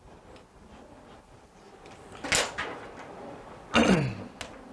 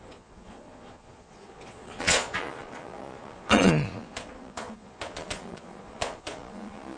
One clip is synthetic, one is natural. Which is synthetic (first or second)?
second